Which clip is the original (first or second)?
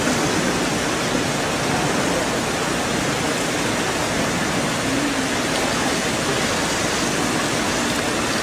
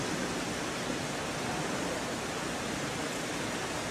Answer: first